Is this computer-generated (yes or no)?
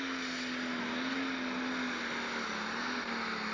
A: no